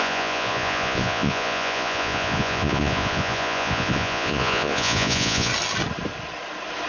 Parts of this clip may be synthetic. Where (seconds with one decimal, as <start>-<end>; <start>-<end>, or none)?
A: 0.0-5.5